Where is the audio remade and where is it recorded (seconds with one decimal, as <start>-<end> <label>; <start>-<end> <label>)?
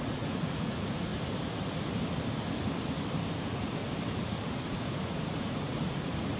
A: 0.0-1.1 remade; 1.1-3.4 recorded; 3.4-3.8 remade; 3.8-4.5 recorded; 4.5-6.4 remade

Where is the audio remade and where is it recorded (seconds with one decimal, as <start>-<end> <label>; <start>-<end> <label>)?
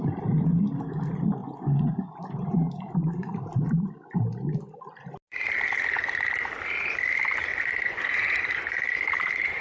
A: 0.0-1.4 recorded; 1.4-2.2 remade; 2.2-7.5 recorded; 7.5-8.4 remade; 8.4-9.6 recorded